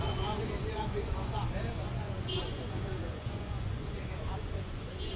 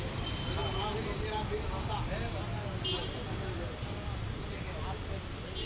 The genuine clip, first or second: second